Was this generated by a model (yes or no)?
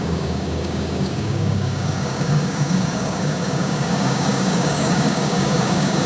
yes